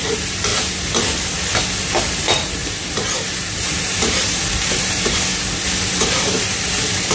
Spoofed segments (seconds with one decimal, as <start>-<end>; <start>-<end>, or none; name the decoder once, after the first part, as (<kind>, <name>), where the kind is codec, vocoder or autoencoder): 0.0-0.5 (vocoder, BigVGAN v2); 2.2-5.3; 5.9-7.1